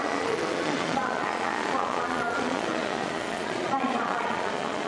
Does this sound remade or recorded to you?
remade